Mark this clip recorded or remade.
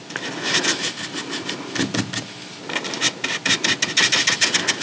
recorded